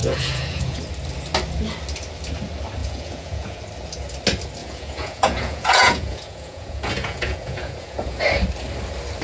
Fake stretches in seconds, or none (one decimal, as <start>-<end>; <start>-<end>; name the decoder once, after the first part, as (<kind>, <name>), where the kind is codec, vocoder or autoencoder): 0.0-0.8 (vocoder, Vocos); 2.8-3.6; 4.6-8.2